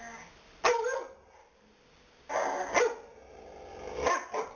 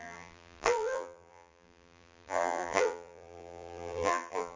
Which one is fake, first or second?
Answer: second